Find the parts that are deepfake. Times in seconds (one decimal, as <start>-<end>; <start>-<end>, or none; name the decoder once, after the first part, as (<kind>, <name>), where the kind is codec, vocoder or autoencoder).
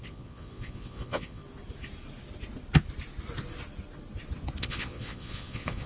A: 0.0-1.4 (vocoder, Vocos); 4.6-5.9